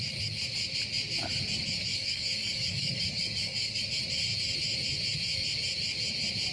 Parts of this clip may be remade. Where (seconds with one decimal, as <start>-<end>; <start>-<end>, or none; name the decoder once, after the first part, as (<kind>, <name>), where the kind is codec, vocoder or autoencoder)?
1.9-3.8 (codec, DAC)